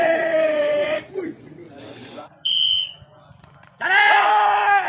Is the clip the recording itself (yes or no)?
no